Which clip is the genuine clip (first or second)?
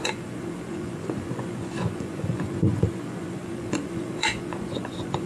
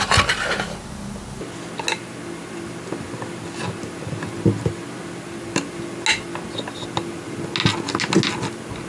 second